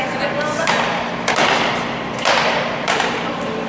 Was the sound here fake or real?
fake